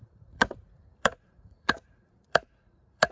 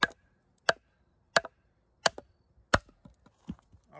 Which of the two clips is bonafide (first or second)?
second